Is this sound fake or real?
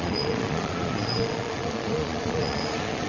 fake